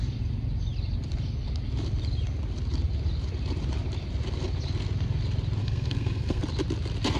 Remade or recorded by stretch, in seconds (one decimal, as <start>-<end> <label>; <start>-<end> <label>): 0.0-5.6 recorded; 5.6-6.4 remade; 6.4-7.2 recorded